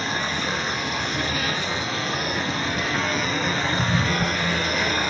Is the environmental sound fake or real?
fake